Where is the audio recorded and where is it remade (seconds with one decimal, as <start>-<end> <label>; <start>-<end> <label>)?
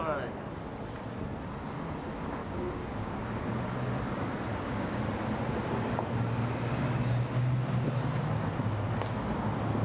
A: 0.0-2.4 recorded; 2.4-3.2 remade; 3.2-4.5 recorded; 4.5-5.0 remade; 5.0-9.8 recorded